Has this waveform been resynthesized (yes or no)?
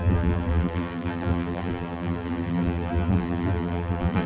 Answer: yes